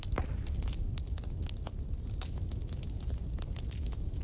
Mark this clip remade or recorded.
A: recorded